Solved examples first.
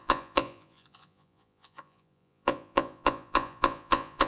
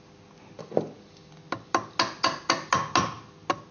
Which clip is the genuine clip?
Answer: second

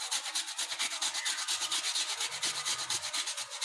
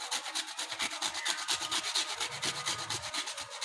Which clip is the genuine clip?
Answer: second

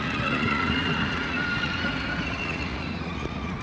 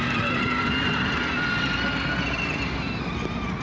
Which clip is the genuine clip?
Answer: second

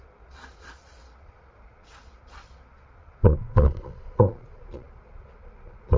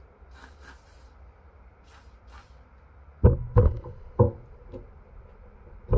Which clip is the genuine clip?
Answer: second